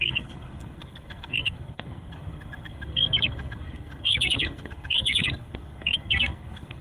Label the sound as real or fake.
fake